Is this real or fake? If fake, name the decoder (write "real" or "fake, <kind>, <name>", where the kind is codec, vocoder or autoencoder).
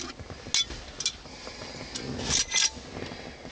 real